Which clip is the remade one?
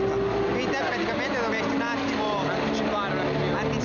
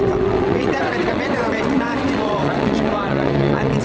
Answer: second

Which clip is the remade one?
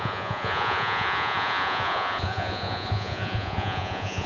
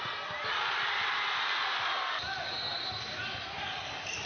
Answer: first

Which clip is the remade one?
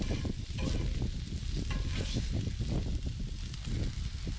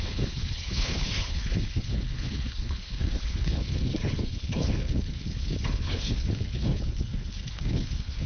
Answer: second